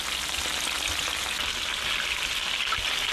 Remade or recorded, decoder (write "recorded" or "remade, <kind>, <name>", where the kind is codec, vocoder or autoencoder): recorded